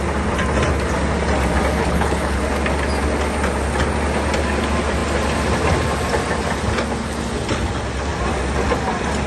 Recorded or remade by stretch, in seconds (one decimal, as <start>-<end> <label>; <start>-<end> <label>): 0.0-1.8 recorded; 1.8-2.4 remade; 2.4-9.3 recorded